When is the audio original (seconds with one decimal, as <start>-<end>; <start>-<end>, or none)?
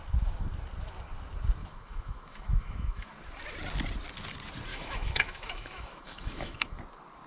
0.0-1.6; 3.1-4.7; 6.8-7.3